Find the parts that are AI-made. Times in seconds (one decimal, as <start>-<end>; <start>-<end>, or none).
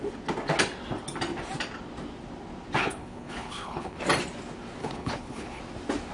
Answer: 2.8-4.0; 4.8-5.6